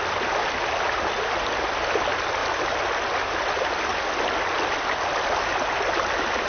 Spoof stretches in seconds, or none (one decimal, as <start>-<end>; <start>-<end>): none